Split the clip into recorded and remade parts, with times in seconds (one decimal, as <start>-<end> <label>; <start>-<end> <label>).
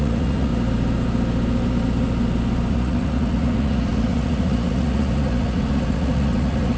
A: 0.0-0.5 remade; 0.5-2.7 recorded; 2.7-6.8 remade